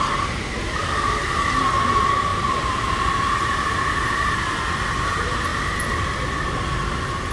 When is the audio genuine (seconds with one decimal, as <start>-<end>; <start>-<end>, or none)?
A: 0.0-2.3; 4.4-5.5; 6.0-7.3